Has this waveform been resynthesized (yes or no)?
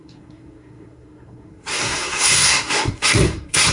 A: yes